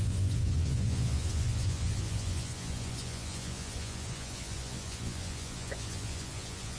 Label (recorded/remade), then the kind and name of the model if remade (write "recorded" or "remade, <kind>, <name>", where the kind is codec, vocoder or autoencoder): remade, vocoder, Vocos